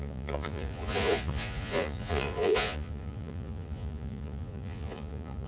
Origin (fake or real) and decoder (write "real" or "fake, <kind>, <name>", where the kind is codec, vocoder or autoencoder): fake, vocoder, Vocos